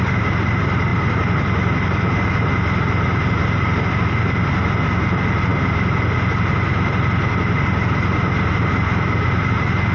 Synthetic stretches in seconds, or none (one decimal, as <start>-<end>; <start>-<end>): none